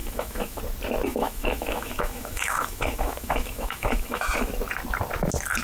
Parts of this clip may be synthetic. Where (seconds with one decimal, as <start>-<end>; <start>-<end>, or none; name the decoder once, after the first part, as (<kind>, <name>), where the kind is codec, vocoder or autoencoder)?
0.0-0.6 (autoencoder, DAC-VAE); 1.1-4.5